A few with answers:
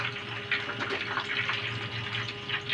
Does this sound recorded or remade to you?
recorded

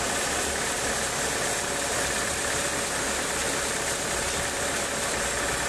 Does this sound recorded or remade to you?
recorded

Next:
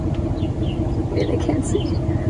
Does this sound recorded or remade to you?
recorded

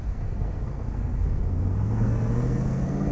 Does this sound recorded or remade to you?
remade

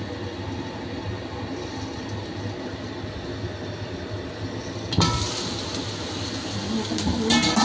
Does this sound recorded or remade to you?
recorded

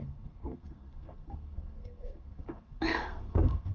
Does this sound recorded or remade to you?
remade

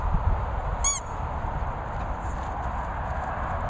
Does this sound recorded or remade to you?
recorded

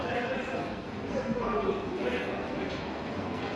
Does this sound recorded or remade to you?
remade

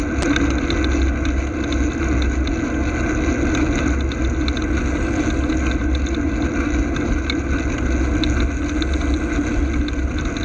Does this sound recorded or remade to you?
recorded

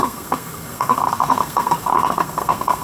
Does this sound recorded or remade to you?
remade